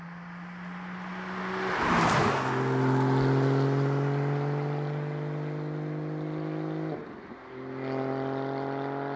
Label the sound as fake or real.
real